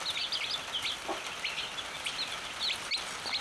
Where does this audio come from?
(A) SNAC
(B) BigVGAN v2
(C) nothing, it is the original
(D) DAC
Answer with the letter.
C